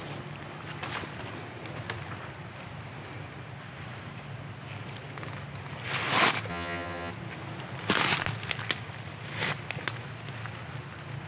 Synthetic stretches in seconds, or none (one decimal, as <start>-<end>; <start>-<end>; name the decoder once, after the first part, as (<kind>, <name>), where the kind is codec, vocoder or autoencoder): 6.5-7.1 (vocoder, HiFi-GAN)

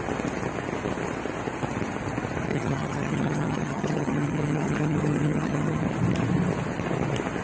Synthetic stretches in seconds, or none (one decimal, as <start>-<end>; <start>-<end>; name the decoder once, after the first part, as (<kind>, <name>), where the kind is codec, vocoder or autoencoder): 2.5-5.8 (vocoder, HiFi-GAN)

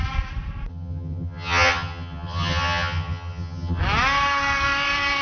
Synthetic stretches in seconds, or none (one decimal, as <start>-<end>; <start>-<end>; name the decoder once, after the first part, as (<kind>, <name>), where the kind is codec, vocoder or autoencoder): 0.7-3.8 (vocoder, HiFi-GAN)

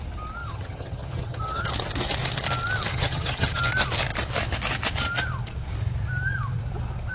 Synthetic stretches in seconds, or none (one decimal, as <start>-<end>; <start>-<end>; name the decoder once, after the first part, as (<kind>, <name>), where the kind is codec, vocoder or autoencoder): 0.4-1.7 (vocoder, HiFi-GAN); 2.9-3.6

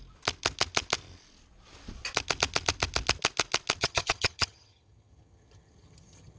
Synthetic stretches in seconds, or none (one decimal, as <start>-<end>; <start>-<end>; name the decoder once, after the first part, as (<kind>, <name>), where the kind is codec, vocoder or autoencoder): 3.8-6.4 (vocoder, HiFi-GAN)

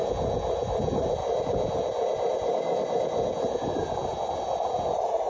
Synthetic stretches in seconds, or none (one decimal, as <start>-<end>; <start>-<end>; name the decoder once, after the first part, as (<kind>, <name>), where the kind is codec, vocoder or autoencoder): none